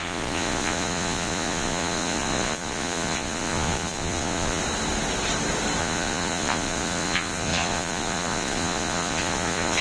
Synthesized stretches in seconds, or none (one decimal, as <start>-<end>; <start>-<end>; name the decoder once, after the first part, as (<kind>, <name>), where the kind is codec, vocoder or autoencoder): 0.0-4.6 (vocoder, Vocos); 5.8-9.8